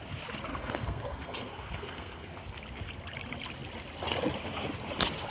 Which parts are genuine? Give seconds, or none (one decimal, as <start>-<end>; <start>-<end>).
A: 0.0-0.5; 2.6-5.3